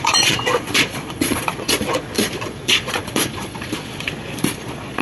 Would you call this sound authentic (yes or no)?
no